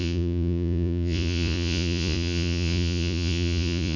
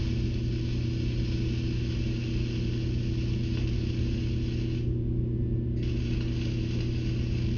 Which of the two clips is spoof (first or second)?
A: first